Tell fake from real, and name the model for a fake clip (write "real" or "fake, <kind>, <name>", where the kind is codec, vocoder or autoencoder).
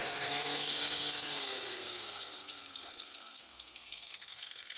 fake, codec, SNAC